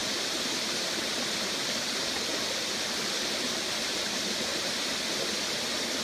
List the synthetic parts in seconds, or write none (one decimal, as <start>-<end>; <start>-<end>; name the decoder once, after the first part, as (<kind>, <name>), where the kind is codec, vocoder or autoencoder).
0.0-0.8 (vocoder, BigVGAN v2); 4.5-5.0